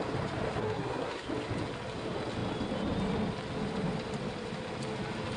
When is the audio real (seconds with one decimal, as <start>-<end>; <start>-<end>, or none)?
0.0-0.6; 1.3-5.4